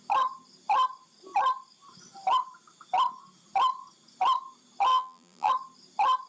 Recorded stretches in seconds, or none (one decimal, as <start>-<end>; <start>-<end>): 0.0-4.9; 5.5-6.3